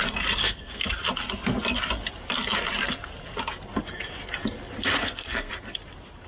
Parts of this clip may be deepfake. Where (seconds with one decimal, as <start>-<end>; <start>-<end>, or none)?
0.4-0.9; 5.0-5.5